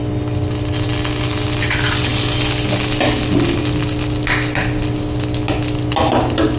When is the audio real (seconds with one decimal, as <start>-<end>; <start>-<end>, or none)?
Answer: 0.0-6.6